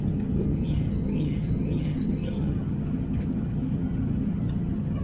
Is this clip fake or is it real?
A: fake